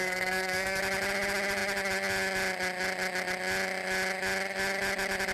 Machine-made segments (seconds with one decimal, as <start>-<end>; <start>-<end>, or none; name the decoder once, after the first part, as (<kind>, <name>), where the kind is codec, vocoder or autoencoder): 0.0-0.8 (codec, SNAC)